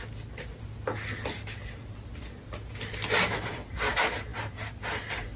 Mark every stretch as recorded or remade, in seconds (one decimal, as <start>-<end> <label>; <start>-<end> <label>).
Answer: 0.0-5.4 recorded